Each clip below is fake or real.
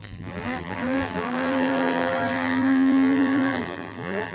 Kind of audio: fake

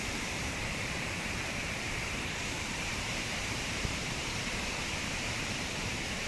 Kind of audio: fake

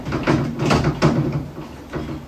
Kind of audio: real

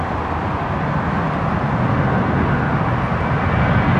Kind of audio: real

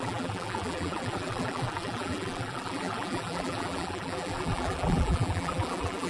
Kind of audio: fake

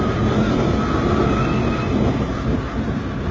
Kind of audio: real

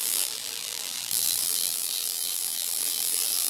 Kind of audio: fake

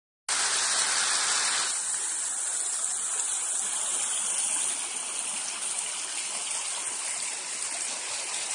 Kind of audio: real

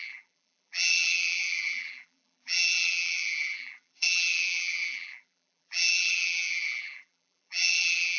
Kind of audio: fake